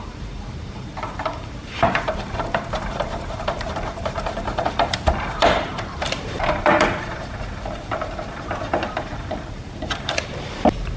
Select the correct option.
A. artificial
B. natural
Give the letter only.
A